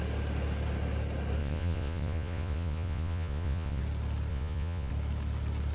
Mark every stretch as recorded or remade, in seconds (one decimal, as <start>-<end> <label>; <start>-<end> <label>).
0.0-1.4 recorded; 1.4-3.8 remade; 3.8-4.3 recorded; 4.3-4.9 remade; 4.9-5.7 recorded